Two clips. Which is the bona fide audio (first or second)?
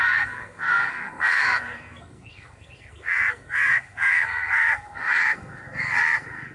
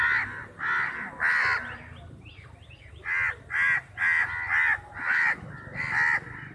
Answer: second